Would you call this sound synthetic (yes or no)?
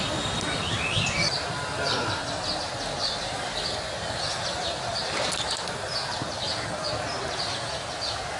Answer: no